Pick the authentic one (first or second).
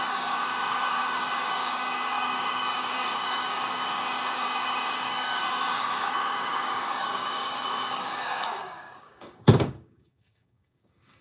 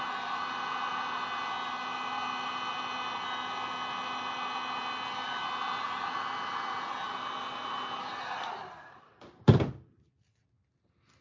second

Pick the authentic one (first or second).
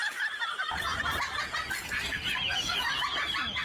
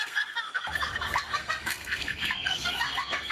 first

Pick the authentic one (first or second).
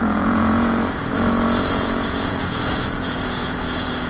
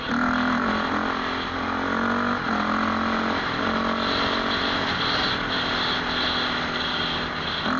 second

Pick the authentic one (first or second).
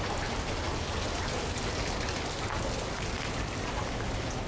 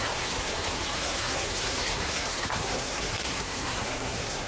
first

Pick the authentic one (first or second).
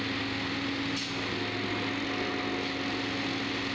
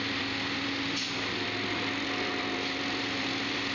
first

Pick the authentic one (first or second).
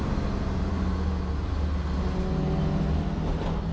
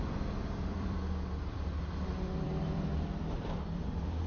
first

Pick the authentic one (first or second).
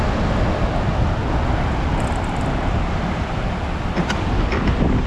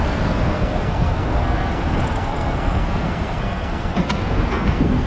first